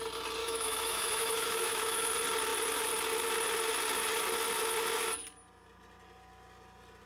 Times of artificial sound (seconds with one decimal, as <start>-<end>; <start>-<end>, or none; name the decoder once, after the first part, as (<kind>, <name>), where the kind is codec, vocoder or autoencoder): 0.4-2.1 (autoencoder, DAC-VAE)